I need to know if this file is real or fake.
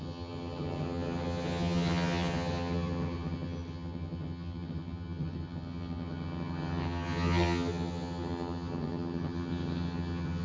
fake